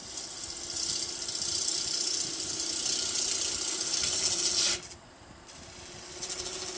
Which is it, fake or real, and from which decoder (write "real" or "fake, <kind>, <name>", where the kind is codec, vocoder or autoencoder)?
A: real